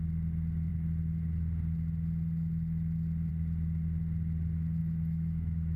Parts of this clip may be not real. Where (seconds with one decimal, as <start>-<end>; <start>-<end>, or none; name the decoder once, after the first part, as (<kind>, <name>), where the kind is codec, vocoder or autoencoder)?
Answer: 4.8-5.8 (autoencoder, DAC-VAE)